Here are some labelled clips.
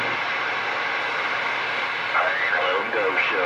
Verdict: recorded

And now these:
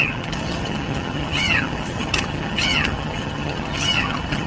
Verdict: remade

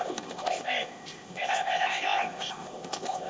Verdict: remade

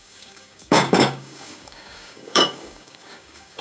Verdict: remade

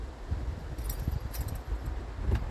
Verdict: remade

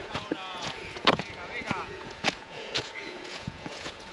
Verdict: remade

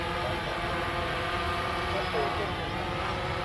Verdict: recorded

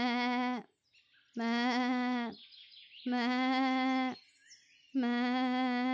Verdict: recorded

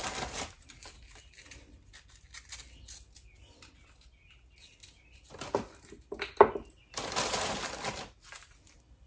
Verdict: recorded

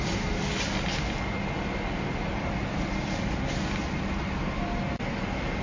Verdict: recorded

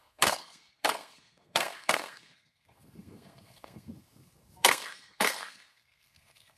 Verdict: remade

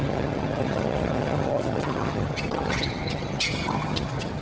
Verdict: remade